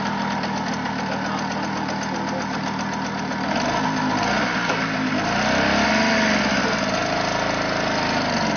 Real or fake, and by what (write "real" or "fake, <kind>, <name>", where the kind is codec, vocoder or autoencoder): real